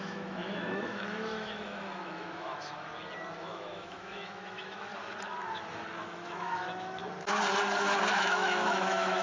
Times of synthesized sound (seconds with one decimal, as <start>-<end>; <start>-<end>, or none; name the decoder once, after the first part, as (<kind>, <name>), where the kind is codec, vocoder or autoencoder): 0.0-2.9 (autoencoder, DAC-VAE); 3.4-4.9; 6.0-7.0; 8.1-9.2